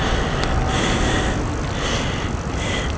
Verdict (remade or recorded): recorded